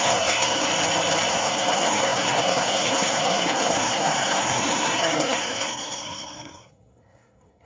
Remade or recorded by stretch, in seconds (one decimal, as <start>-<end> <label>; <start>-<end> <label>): 0.0-0.7 remade; 0.7-1.3 recorded; 1.3-7.7 remade

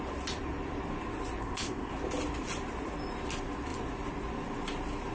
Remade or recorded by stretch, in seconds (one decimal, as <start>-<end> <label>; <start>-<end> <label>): 0.0-1.4 recorded; 1.4-1.9 remade; 1.9-5.1 recorded

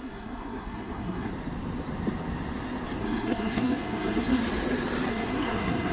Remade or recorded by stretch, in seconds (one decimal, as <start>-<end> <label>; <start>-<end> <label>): 0.0-1.3 remade; 1.3-3.0 recorded; 3.0-4.4 remade; 4.4-5.1 recorded; 5.1-5.9 remade